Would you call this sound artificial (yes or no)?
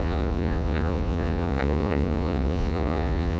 yes